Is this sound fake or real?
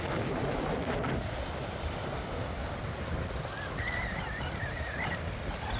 real